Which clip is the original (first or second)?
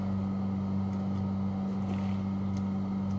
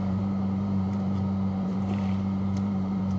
first